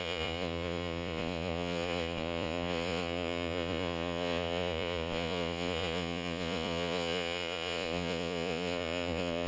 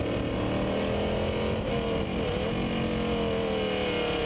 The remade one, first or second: first